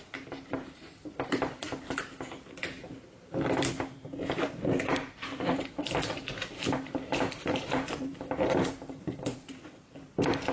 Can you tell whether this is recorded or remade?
remade